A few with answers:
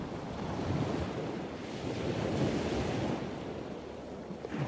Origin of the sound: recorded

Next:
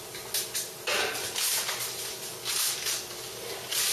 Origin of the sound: recorded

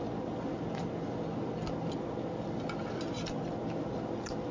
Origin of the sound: recorded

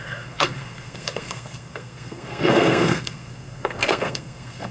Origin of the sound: remade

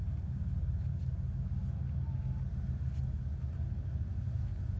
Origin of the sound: recorded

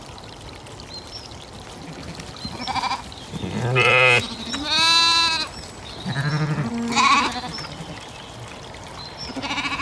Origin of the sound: recorded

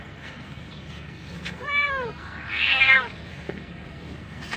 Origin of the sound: remade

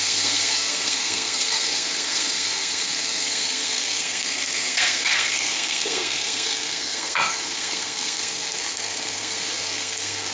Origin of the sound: remade